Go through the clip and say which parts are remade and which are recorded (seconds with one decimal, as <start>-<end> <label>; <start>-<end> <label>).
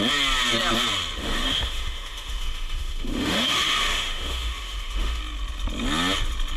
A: 0.0-1.2 recorded; 1.2-5.2 remade; 5.2-6.6 recorded